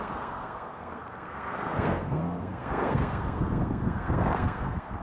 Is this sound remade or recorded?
remade